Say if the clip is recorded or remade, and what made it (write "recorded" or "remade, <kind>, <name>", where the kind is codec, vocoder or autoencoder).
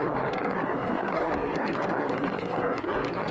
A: remade, codec, SNAC